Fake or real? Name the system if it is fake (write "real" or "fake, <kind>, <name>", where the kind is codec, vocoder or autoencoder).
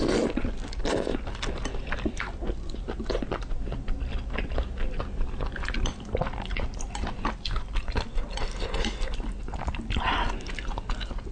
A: real